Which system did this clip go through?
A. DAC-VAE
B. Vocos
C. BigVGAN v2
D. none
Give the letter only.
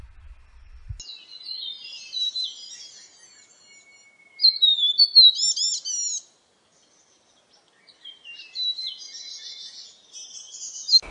D